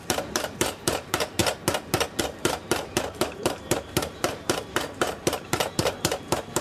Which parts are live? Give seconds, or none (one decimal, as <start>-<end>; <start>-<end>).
1.4-2.2